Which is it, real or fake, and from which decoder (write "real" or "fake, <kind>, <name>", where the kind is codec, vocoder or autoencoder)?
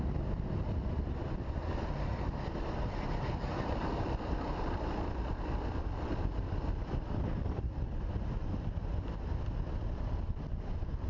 fake, vocoder, BigVGAN v2